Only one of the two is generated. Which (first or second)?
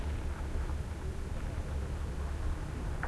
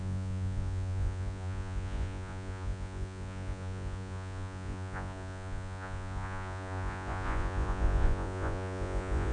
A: second